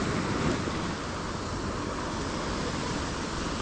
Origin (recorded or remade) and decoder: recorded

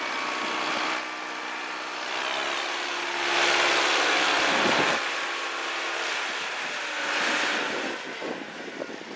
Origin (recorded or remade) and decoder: recorded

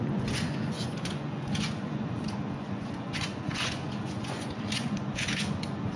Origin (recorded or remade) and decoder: remade, vocoder, Vocos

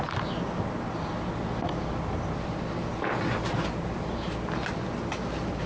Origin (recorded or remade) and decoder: recorded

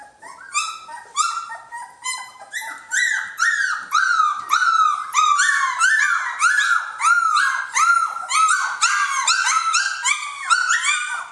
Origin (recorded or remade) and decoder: recorded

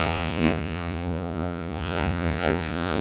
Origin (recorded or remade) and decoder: remade, vocoder, Vocos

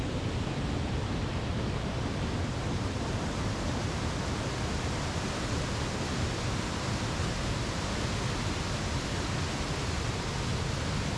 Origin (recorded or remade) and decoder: recorded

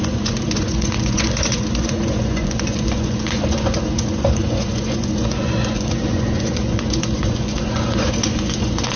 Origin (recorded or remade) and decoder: remade, vocoder, Vocos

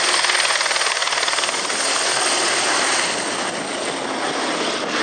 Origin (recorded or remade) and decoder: recorded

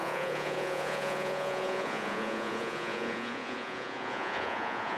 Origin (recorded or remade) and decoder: remade, vocoder, Vocos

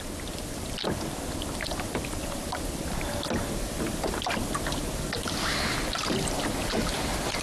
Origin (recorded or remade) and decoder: recorded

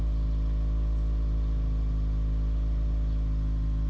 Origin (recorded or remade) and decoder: recorded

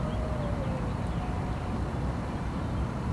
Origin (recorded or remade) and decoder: recorded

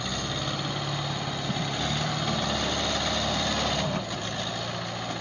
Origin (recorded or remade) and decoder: recorded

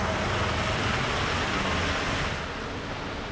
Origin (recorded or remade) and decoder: recorded